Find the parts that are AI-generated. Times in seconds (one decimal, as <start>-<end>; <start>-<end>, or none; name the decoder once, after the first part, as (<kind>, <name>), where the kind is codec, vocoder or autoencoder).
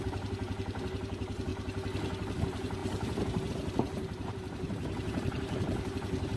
0.0-1.5 (vocoder, BigVGAN v2); 2.4-6.4